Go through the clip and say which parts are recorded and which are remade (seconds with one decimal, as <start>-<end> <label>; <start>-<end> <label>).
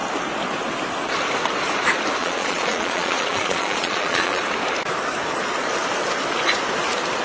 0.0-2.2 recorded; 2.2-4.4 remade; 4.4-7.2 recorded